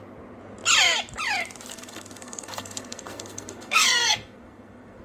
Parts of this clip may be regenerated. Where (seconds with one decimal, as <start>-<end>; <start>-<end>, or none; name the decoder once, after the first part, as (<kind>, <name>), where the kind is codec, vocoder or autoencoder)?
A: 1.7-5.0 (codec, SNAC)